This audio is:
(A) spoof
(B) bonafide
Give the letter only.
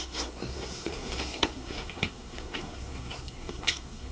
A